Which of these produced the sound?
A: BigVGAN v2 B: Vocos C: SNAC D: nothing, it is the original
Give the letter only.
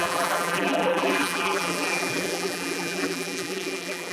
A